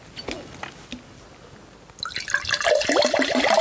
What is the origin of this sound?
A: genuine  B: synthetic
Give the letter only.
A